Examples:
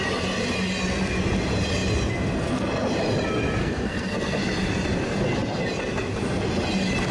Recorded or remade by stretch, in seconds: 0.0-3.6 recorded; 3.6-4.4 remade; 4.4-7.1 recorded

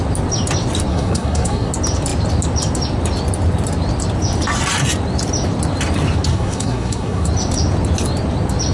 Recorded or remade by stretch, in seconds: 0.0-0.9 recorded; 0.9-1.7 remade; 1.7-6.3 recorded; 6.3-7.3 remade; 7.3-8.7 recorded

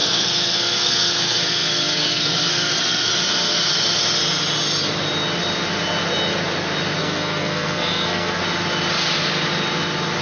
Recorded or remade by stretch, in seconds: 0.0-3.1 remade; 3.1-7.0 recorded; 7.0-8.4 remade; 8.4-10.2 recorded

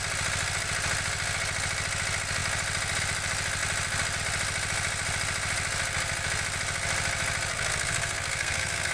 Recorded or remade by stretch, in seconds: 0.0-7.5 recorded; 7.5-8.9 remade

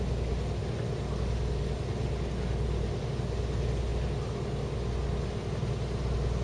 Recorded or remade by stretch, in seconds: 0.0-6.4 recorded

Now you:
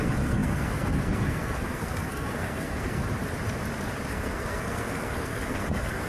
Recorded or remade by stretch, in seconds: 0.0-3.0 remade; 3.0-4.1 recorded; 4.1-6.1 remade